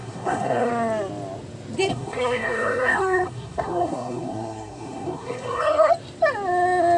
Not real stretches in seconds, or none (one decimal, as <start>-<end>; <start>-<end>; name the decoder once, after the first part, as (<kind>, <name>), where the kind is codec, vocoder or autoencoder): 0.0-0.7 (codec, SNAC); 1.9-5.9